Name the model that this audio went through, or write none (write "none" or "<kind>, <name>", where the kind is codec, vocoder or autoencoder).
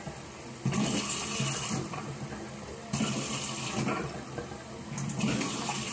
none